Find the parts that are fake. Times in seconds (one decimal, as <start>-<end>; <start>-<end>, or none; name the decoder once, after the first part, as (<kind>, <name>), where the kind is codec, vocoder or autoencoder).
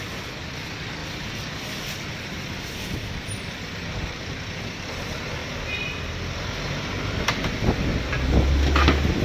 1.0-1.5 (vocoder, BigVGAN v2); 5.4-6.5